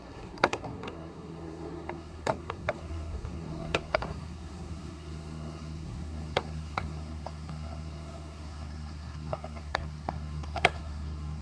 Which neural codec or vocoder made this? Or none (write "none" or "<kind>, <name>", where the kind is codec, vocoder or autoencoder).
codec, SNAC